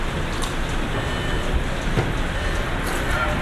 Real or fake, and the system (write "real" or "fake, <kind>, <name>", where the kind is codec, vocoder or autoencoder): real